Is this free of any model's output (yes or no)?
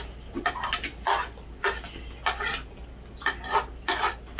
yes